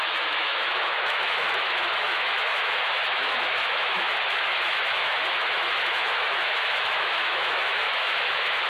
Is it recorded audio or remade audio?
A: remade